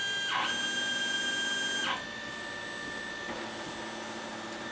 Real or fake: real